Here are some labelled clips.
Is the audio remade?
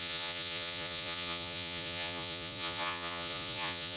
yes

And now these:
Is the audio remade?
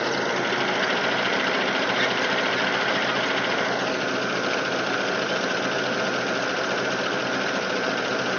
no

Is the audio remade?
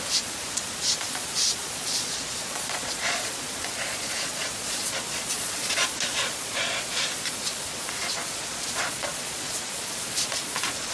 yes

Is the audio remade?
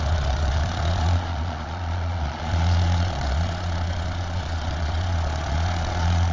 yes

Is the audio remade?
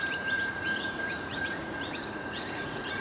yes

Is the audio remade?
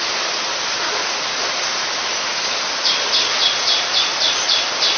no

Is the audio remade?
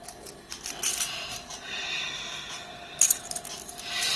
no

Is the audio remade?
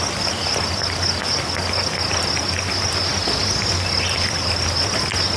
no